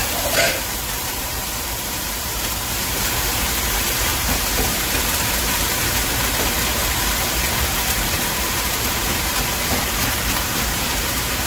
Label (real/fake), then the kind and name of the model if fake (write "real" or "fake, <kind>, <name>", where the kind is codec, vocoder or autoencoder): fake, vocoder, BigVGAN v2